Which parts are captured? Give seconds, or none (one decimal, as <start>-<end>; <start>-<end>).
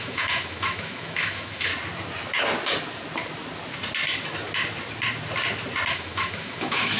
1.7-5.9